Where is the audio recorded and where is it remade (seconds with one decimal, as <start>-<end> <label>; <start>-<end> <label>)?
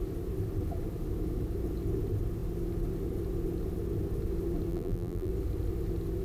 0.0-4.7 recorded; 4.7-5.3 remade; 5.3-6.2 recorded